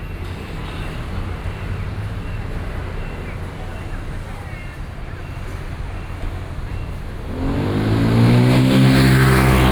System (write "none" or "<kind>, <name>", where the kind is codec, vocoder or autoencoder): none